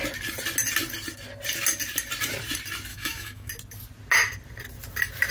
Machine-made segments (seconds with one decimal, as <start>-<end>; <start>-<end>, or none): 2.9-3.5